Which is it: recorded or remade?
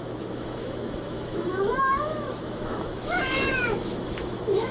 remade